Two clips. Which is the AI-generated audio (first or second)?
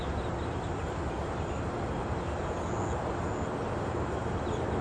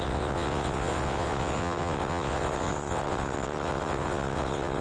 second